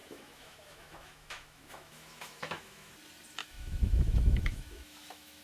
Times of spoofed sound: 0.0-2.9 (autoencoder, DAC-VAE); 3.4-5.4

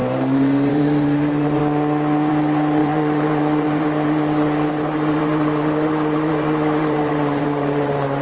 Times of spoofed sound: 0.0-1.6 (vocoder, BigVGAN v2); 2.3-8.2

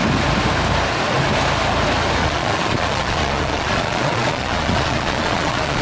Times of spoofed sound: 2.2-5.8 (vocoder, Vocos)